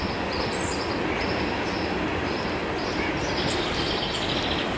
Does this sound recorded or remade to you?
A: recorded